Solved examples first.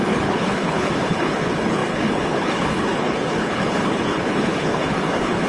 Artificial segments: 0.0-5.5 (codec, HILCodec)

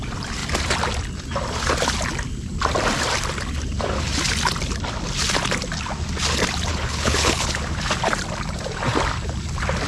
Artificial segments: 6.7-7.6 (codec, HILCodec)

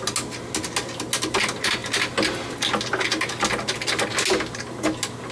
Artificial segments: none

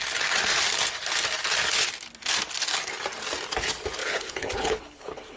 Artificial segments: 4.0-5.4 (codec, HILCodec)

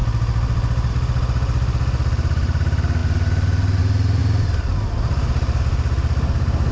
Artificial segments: none